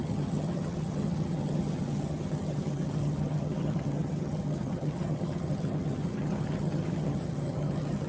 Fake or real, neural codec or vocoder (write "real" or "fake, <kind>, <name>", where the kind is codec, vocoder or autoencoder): fake, vocoder, HiFi-GAN